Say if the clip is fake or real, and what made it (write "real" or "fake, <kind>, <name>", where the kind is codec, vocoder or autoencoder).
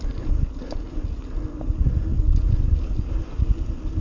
real